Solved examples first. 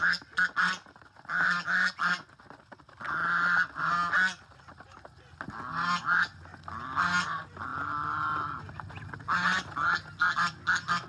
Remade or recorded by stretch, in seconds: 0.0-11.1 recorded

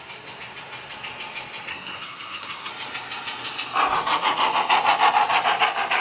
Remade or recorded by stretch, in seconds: 0.0-1.7 recorded; 1.7-2.7 remade; 2.7-6.0 recorded